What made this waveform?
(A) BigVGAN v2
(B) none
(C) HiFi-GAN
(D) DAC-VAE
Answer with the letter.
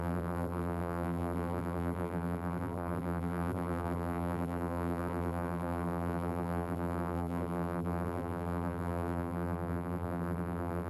A